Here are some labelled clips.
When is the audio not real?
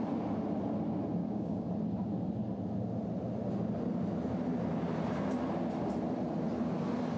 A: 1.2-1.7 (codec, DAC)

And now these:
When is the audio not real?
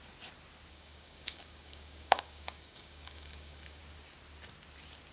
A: 0.7-3.8 (codec, DAC)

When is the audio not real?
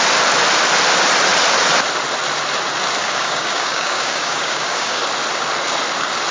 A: 3.0-5.0 (codec, DAC)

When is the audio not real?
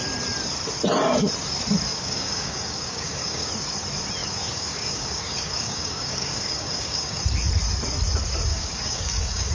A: 1.9-3.5 (codec, DAC); 4.2-7.2; 8.5-9.5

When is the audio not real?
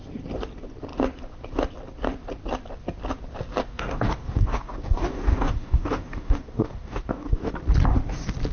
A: 3.6-7.5 (codec, DAC)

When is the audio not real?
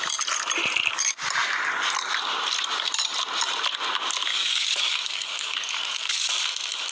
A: 4.3-6.3 (codec, DAC)